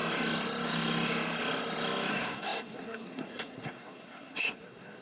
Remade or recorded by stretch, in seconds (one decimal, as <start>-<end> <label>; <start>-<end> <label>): 0.0-2.1 recorded; 2.1-5.0 remade

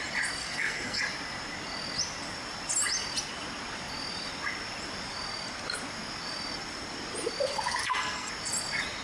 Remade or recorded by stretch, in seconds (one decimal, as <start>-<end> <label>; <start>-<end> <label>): 0.0-0.4 recorded; 0.4-1.0 remade; 1.0-7.8 recorded; 7.8-8.3 remade; 8.3-9.0 recorded

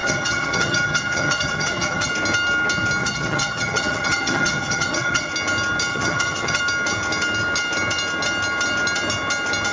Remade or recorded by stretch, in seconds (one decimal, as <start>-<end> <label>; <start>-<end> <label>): 0.0-2.1 remade; 2.1-3.0 recorded; 3.0-5.3 remade; 5.3-5.9 recorded; 5.9-6.6 remade; 6.6-9.7 recorded

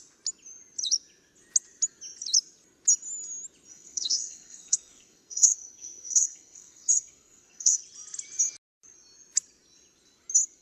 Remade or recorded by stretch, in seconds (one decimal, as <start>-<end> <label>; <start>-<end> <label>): 0.0-3.7 recorded; 3.7-7.8 remade; 7.8-10.6 recorded

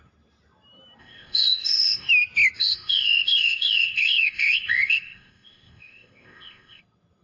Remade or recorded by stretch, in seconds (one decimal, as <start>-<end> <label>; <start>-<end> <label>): 0.0-1.0 recorded; 1.0-2.1 remade; 2.1-2.6 recorded; 2.6-6.8 remade; 6.8-7.2 recorded

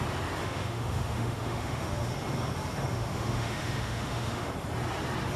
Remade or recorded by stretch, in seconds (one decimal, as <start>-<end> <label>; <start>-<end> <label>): 0.0-0.4 recorded; 0.4-2.1 remade; 2.1-2.9 recorded; 2.9-4.5 remade; 4.5-5.4 recorded